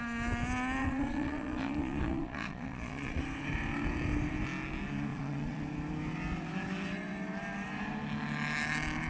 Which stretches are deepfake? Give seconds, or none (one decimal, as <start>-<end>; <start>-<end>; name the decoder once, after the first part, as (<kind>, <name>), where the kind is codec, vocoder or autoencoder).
0.8-3.2 (vocoder, Vocos); 5.1-5.6